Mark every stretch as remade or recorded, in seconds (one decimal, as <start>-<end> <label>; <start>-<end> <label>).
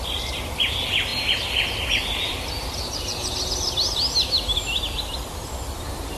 0.0-6.2 recorded